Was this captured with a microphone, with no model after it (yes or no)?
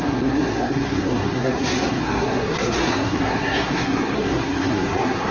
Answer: no